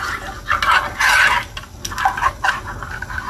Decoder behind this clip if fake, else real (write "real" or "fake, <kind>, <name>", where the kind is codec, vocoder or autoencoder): real